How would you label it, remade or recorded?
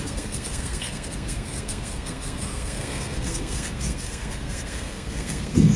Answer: remade